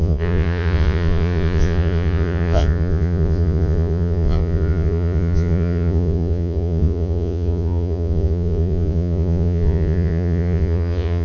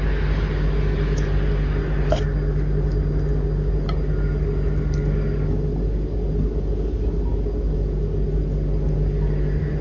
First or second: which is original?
second